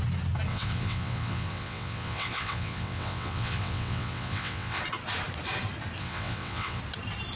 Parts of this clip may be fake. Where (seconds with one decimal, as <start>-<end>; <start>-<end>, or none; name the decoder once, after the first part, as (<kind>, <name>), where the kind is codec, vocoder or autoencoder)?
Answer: 0.5-4.8 (vocoder, WaveNeXt); 6.0-6.8